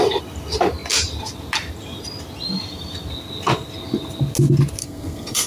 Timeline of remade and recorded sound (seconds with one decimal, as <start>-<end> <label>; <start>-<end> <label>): 0.0-4.8 recorded; 4.8-5.5 remade